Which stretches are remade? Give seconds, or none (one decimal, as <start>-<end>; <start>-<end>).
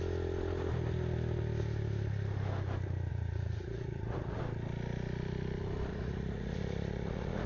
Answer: 3.1-4.4; 5.9-7.5